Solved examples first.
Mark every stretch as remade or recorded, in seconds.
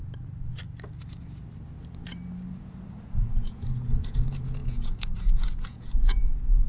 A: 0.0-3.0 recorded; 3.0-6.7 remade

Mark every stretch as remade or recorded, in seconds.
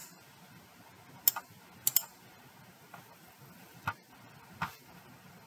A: 0.0-5.5 recorded